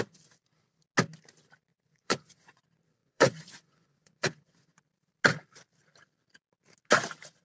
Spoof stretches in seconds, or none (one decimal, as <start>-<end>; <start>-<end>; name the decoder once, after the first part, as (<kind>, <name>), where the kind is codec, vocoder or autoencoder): 1.7-2.6 (vocoder, Vocos); 3.0-4.8